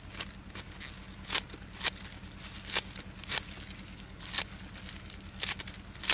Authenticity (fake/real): real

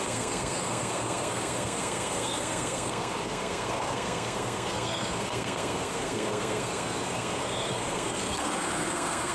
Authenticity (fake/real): fake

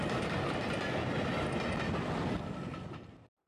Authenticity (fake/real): real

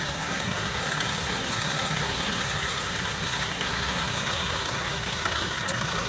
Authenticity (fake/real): fake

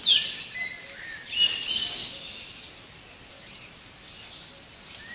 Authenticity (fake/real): real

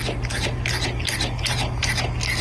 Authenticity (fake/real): real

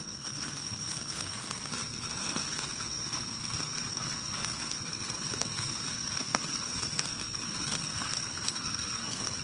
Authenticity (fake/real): fake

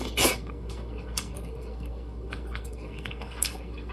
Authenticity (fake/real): fake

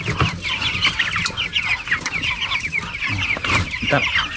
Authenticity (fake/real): real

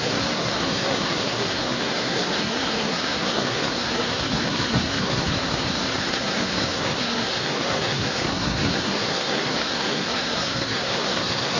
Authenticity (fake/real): fake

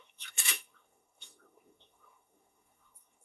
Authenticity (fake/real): fake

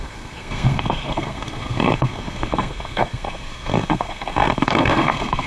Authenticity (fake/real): fake